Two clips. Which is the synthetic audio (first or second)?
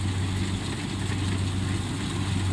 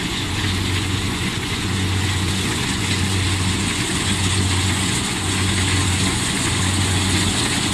second